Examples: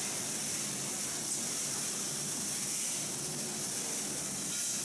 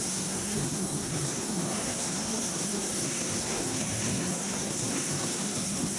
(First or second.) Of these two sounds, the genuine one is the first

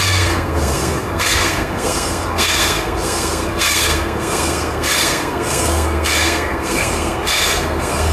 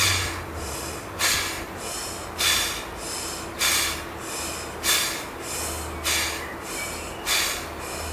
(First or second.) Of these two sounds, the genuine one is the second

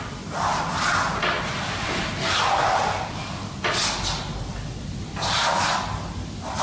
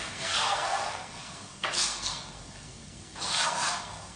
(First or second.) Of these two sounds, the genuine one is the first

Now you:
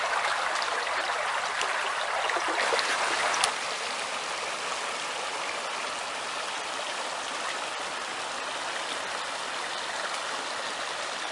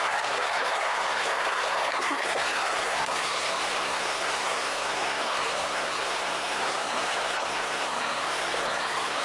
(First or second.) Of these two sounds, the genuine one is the first